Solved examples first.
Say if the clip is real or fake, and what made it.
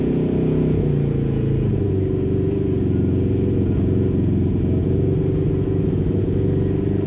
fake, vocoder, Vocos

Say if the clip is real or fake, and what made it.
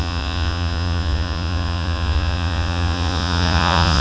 fake, vocoder, Vocos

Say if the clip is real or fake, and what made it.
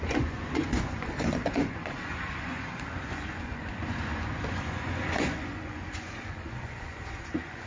fake, vocoder, Vocos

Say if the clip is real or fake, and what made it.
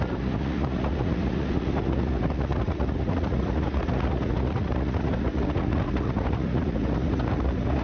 fake, vocoder, Vocos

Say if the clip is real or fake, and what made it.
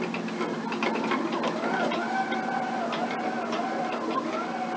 real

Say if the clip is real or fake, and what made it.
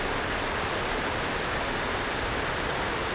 real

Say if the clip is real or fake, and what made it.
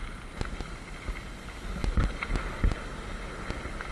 real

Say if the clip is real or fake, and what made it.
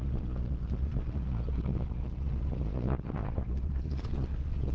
fake, vocoder, Vocos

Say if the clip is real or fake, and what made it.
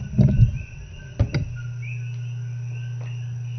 real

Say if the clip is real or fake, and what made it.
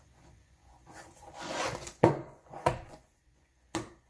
fake, vocoder, Vocos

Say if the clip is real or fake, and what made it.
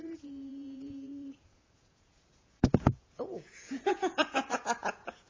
fake, vocoder, Vocos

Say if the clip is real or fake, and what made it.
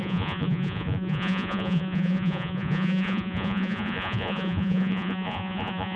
fake, vocoder, Vocos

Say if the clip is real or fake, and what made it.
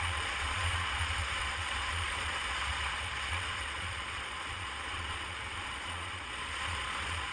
fake, vocoder, Vocos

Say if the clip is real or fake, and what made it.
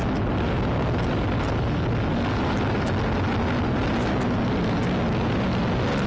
real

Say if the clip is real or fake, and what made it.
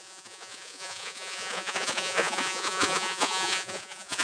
fake, vocoder, Vocos